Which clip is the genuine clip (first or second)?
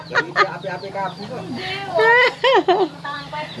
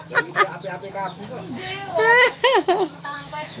first